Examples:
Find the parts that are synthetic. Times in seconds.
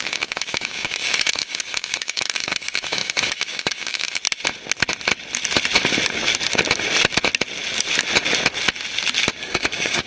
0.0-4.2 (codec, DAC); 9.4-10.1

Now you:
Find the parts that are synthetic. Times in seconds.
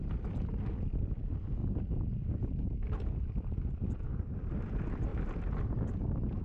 0.0-1.1 (vocoder, BigVGAN v2); 5.1-5.7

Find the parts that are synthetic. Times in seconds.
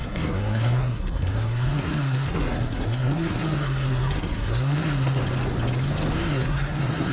0.0-5.2 (codec, SNAC); 6.3-7.1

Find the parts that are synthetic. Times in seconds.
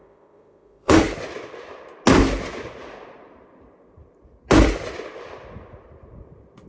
0.0-1.0 (autoencoder, DAC-VAE)